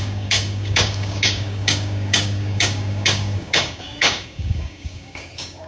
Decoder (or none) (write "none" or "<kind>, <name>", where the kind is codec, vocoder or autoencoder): codec, DAC